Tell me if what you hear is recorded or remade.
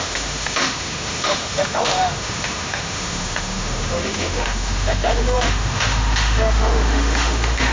remade